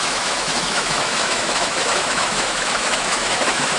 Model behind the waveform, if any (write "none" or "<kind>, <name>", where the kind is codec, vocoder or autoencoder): autoencoder, DAC-VAE